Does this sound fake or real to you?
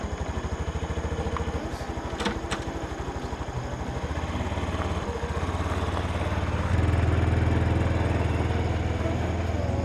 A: real